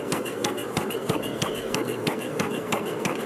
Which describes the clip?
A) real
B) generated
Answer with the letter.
B